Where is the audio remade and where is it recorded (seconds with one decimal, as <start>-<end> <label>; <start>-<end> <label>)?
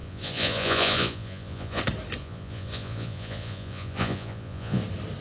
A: 0.0-1.8 remade; 1.8-2.2 recorded; 2.2-4.8 remade; 4.8-5.2 recorded